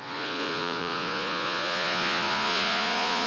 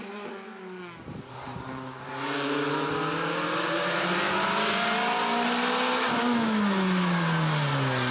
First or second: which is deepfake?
first